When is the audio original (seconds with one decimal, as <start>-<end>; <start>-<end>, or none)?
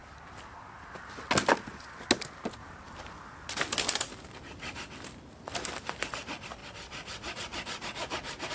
1.2-2.6; 3.6-6.6